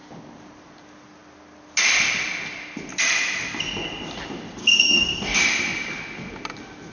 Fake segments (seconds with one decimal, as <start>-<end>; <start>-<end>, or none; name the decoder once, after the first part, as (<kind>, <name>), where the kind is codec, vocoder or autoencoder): 4.6-5.4 (codec, DAC)